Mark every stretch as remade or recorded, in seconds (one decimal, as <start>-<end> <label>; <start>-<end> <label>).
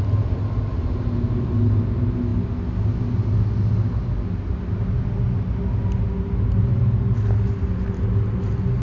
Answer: 0.0-8.8 recorded